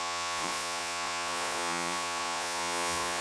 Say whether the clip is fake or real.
fake